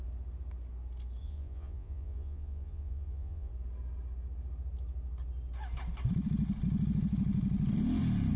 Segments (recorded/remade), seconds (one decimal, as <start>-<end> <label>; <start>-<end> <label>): 0.0-1.2 recorded; 1.2-3.5 remade; 3.5-8.4 recorded